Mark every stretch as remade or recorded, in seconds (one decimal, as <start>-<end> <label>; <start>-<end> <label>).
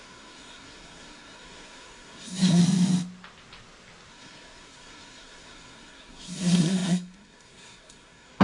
0.0-2.6 remade; 2.6-4.1 recorded; 4.1-8.4 remade